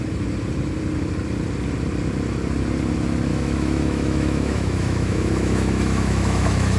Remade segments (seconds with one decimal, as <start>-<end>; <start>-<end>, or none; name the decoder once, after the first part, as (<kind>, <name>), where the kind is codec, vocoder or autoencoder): 3.3-6.8 (autoencoder, DAC-VAE)